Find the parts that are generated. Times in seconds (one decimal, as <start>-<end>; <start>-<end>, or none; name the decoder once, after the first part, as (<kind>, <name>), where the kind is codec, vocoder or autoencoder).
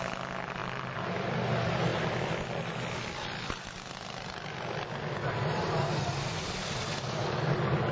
none